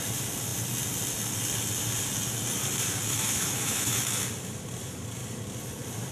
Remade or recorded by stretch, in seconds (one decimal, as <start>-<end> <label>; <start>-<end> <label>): 0.0-3.1 recorded; 3.1-4.2 remade; 4.2-6.1 recorded